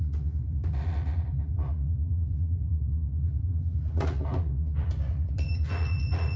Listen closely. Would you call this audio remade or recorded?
remade